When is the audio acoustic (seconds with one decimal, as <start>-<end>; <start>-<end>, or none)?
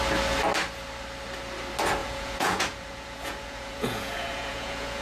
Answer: 0.0-2.0